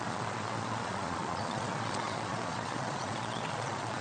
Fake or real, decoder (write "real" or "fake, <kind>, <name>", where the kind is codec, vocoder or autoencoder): fake, vocoder, Vocos